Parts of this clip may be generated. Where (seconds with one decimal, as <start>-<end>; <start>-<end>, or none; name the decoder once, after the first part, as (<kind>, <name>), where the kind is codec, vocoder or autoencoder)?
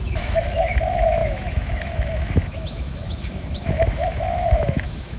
0.0-5.2 (autoencoder, DAC-VAE)